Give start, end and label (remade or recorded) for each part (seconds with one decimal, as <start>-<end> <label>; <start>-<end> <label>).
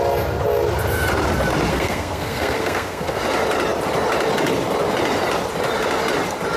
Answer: 0.0-1.7 recorded; 1.7-3.2 remade; 3.2-6.6 recorded